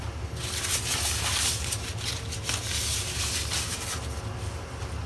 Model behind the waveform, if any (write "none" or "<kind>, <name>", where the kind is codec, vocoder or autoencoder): none